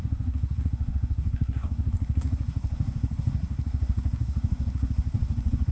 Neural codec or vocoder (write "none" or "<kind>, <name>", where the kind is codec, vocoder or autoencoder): codec, SNAC